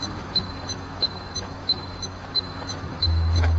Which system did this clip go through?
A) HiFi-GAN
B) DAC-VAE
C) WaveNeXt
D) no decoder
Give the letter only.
B